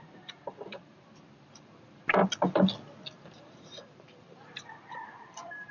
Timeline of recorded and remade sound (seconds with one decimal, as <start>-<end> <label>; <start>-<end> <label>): 0.0-2.2 remade; 2.2-3.2 recorded; 3.2-5.7 remade